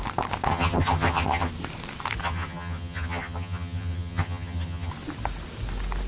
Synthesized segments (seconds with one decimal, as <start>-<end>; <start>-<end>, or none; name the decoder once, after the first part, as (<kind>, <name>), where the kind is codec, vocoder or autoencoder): 0.5-1.5 (vocoder, HiFi-GAN); 2.2-4.9